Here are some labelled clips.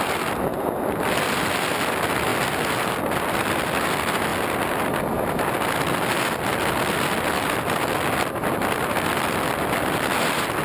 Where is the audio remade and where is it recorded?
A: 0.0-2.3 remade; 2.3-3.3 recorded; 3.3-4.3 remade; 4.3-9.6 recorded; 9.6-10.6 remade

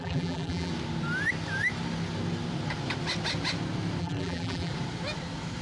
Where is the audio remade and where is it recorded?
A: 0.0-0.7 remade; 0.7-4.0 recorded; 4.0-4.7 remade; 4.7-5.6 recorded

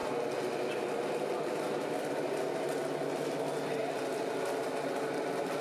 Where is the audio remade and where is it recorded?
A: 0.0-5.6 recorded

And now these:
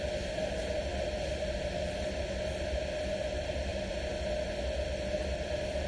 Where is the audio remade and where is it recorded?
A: 0.0-5.9 recorded

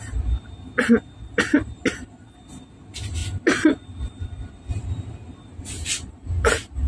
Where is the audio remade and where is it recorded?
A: 0.0-6.9 recorded